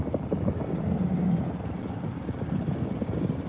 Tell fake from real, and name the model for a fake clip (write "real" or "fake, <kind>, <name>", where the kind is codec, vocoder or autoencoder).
real